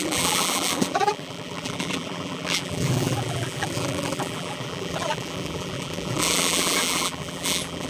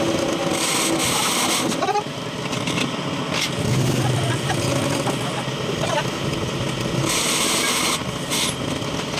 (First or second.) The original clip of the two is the second